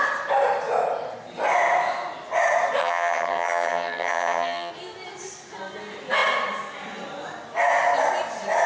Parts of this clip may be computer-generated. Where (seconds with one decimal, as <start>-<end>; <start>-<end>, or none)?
2.8-4.7